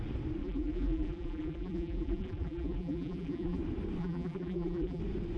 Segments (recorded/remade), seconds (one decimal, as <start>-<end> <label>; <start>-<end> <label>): 0.0-0.4 recorded; 0.4-3.6 remade; 3.6-4.0 recorded; 4.0-5.0 remade; 5.0-5.4 recorded